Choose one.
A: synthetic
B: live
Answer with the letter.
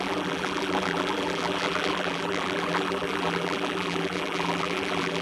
A